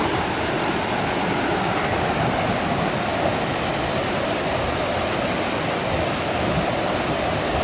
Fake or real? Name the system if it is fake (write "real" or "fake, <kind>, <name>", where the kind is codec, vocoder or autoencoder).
real